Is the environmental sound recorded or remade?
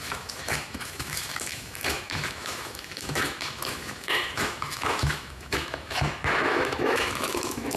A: remade